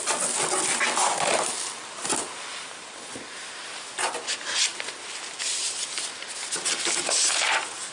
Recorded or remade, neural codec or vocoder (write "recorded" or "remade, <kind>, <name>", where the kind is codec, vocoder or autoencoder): recorded